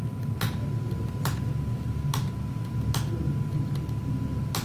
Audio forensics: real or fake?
real